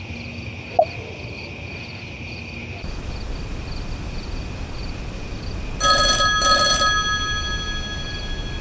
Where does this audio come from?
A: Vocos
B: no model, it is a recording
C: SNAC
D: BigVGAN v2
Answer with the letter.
B